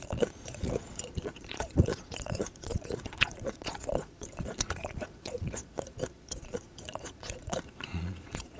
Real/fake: fake